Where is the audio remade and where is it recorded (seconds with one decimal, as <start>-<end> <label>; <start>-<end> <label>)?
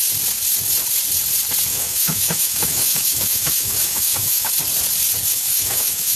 0.0-1.7 recorded; 1.7-4.5 remade; 4.5-5.3 recorded; 5.3-6.2 remade